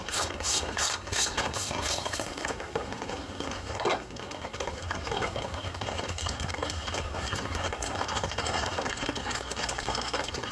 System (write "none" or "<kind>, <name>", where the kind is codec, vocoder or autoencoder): codec, SNAC